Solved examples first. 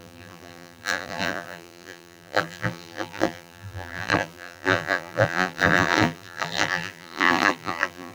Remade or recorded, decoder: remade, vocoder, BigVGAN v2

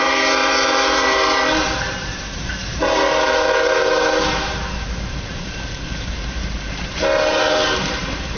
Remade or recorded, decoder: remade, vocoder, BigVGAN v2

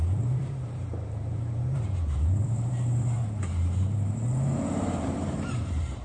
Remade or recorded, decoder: remade, vocoder, BigVGAN v2